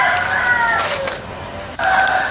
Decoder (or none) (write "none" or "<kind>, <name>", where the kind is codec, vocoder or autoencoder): none